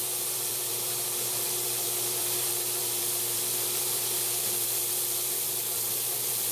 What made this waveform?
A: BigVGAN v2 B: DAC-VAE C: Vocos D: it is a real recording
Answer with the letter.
A